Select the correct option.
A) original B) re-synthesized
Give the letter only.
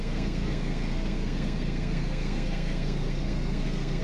B